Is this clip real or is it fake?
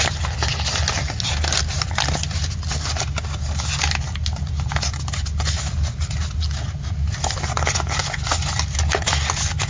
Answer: real